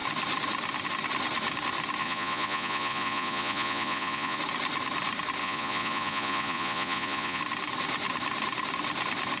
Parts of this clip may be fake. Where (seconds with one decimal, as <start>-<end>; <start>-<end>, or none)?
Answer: 2.0-4.4; 5.4-7.4